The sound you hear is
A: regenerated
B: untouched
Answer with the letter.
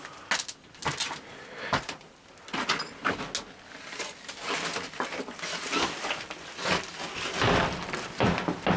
B